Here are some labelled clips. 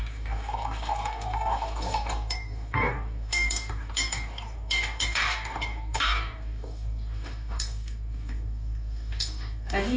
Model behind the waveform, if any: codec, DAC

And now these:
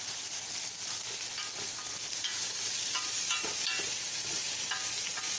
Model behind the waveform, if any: none